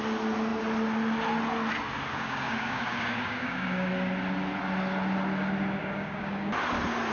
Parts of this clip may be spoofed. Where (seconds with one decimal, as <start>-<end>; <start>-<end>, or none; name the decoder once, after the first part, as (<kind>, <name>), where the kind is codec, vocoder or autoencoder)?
2.1-3.9 (codec, DAC); 5.8-6.5